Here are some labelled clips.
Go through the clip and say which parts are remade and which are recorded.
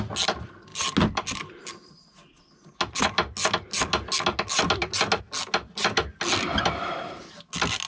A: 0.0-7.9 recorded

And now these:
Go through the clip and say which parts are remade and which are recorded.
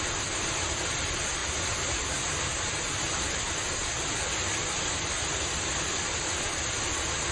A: 0.0-7.3 recorded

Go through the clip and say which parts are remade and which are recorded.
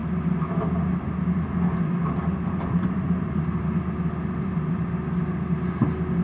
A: 0.0-2.0 recorded; 2.0-3.4 remade; 3.4-6.2 recorded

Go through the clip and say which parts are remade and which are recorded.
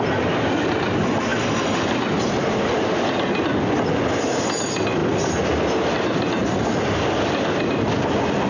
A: 0.0-8.5 recorded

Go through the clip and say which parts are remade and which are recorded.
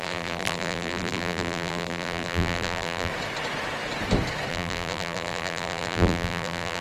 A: 0.0-3.1 remade; 3.1-4.5 recorded; 4.5-6.8 remade